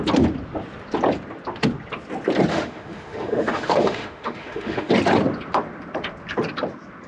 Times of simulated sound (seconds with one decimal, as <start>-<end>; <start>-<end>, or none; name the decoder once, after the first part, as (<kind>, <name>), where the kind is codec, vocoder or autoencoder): 2.5-4.9 (autoencoder, DAC-VAE)